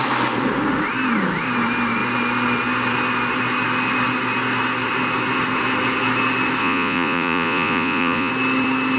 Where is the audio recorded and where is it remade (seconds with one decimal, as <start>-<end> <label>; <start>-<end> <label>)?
0.0-6.6 recorded; 6.6-8.3 remade; 8.3-9.0 recorded